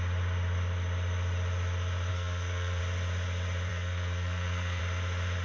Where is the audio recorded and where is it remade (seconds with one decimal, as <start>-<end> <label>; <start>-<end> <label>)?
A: 0.0-2.1 recorded; 2.1-2.8 remade; 2.8-3.7 recorded; 3.7-4.8 remade; 4.8-5.4 recorded